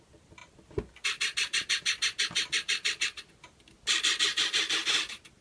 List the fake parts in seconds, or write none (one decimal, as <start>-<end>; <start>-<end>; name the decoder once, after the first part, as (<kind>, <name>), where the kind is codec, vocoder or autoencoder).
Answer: 0.0-5.4 (vocoder, BigVGAN v2)